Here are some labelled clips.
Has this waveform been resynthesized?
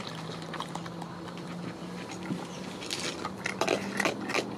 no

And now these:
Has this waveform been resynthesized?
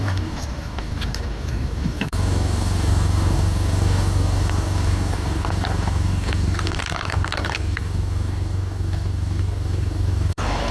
yes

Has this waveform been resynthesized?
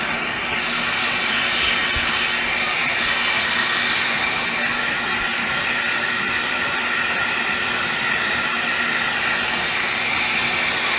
no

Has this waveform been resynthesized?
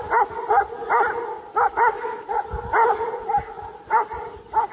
no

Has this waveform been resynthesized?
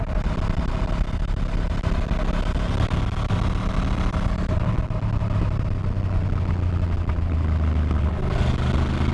no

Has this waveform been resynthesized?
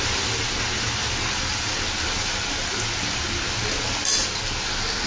no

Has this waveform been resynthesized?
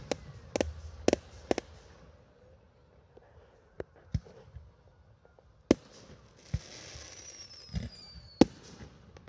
no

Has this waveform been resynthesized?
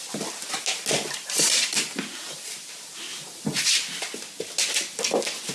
no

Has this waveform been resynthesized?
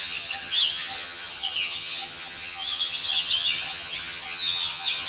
yes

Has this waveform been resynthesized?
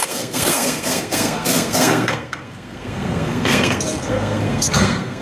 yes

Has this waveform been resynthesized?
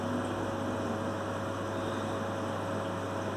no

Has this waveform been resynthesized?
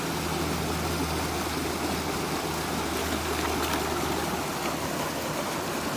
no